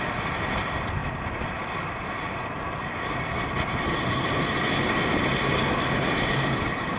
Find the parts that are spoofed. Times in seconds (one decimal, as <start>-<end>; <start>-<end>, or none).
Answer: none

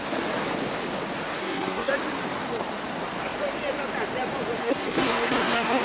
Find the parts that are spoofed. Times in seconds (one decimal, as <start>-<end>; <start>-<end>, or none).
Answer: 1.4-1.9; 4.6-5.8

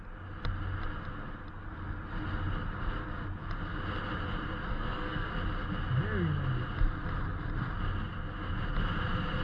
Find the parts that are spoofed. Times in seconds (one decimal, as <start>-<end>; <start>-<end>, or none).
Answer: 4.7-5.3

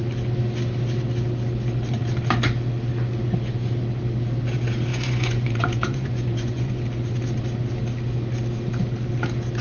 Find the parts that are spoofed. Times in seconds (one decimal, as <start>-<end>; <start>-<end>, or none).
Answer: 4.9-6.8

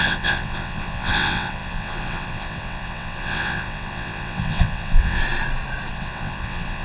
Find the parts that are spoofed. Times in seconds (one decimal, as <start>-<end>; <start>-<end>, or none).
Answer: 0.0-5.2; 5.9-6.8